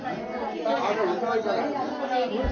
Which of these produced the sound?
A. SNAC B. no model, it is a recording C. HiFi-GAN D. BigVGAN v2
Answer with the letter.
B